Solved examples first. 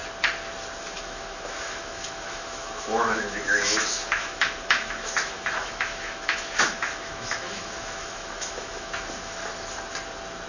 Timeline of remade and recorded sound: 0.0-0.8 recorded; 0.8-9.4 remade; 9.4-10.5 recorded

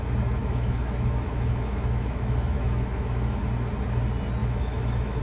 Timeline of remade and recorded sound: 0.0-0.4 recorded; 0.4-3.4 remade; 3.4-4.4 recorded; 4.4-5.2 remade